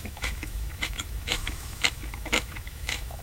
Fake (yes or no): yes